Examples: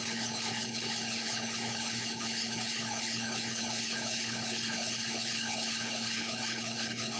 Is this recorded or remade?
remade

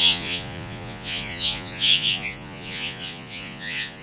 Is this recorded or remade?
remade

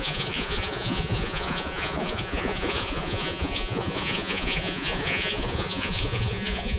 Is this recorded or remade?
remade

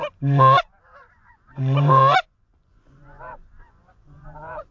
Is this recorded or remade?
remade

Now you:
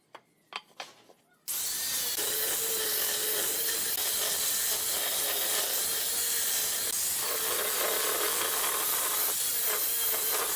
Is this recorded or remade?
recorded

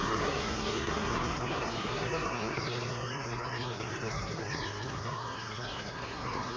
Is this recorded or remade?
remade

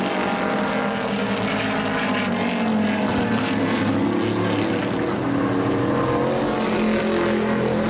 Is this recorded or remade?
recorded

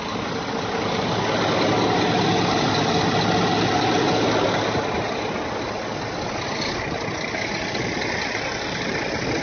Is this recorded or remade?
recorded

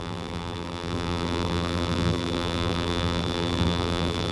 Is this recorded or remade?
remade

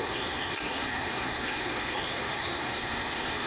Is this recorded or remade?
remade